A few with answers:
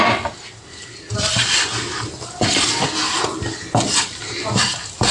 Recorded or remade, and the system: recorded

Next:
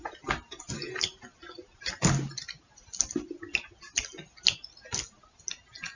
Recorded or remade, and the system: recorded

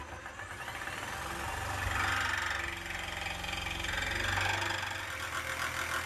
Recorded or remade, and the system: recorded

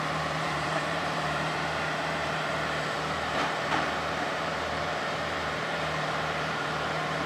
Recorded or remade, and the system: remade, vocoder, BigVGAN v2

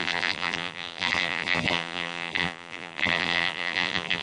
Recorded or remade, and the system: remade, vocoder, BigVGAN v2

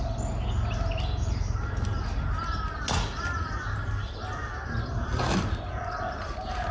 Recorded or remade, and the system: recorded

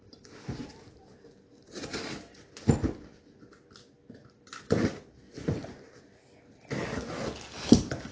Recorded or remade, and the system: recorded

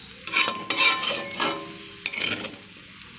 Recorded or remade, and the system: recorded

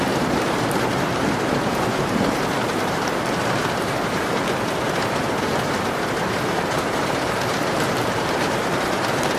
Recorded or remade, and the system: remade, vocoder, BigVGAN v2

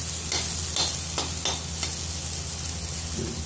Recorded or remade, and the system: recorded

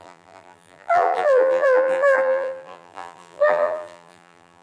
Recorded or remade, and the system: remade, vocoder, BigVGAN v2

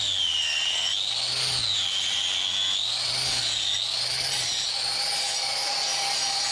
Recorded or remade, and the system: recorded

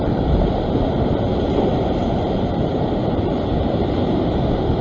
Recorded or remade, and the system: remade, vocoder, BigVGAN v2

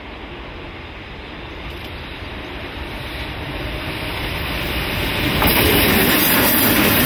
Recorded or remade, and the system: remade, vocoder, BigVGAN v2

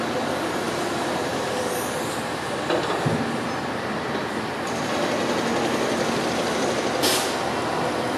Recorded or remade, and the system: recorded